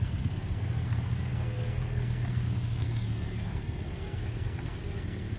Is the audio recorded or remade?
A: remade